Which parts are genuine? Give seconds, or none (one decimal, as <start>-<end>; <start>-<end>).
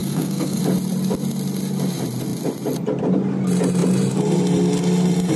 0.6-5.4